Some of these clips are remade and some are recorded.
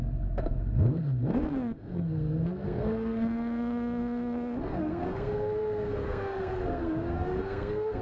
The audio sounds remade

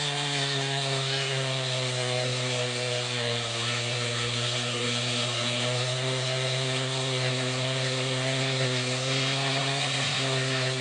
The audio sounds remade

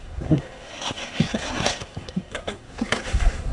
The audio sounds remade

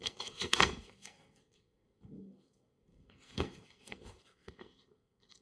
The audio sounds remade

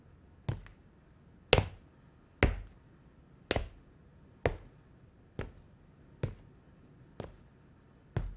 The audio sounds recorded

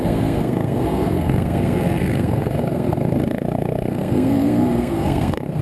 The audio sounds remade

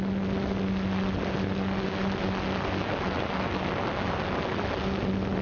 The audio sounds recorded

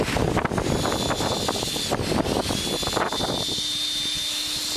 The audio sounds recorded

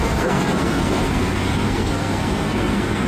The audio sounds remade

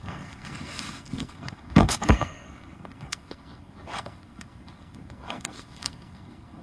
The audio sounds remade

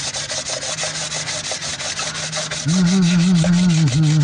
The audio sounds recorded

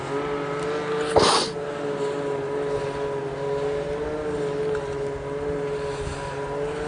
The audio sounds recorded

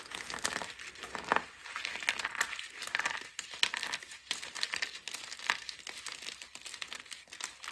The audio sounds recorded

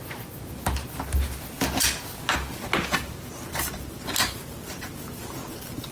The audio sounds recorded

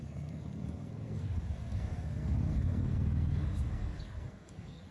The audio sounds remade